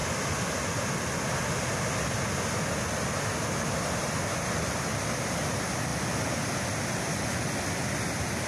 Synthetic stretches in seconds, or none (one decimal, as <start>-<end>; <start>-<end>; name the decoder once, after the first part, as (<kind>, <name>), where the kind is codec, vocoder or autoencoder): none